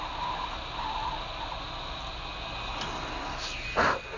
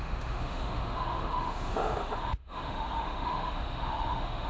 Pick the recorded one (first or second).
first